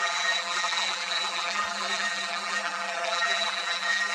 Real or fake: fake